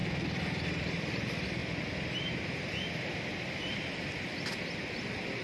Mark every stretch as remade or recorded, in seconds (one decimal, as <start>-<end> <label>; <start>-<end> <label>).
0.0-1.6 remade; 1.6-4.3 recorded; 4.3-5.4 remade